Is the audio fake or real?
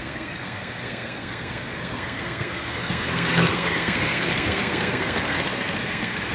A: fake